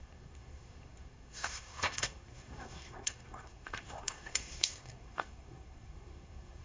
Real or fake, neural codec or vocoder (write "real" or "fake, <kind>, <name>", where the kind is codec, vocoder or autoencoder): fake, codec, SNAC